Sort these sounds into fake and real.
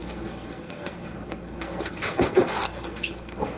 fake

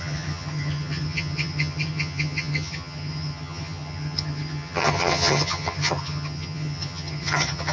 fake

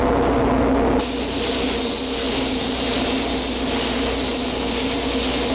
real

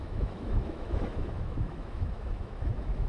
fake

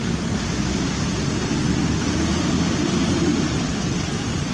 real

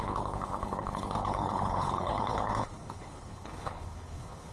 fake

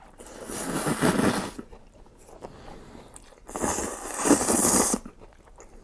real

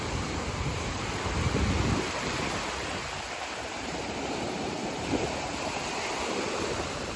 real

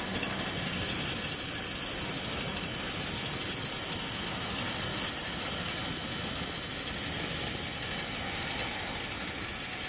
real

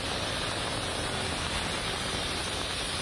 real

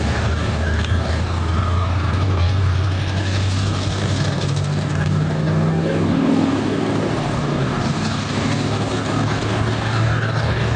fake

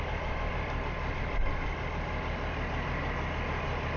real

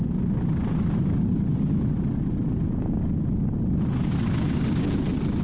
real